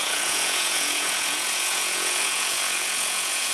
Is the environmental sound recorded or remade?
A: remade